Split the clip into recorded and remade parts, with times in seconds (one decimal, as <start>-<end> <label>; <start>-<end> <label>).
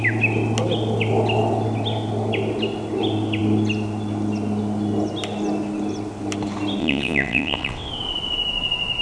0.0-6.8 recorded; 6.8-7.9 remade; 7.9-9.0 recorded